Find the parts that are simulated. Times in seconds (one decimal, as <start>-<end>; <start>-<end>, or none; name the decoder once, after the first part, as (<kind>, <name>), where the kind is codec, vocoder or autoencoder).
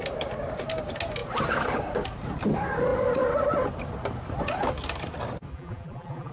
5.5-6.3 (vocoder, BigVGAN v2)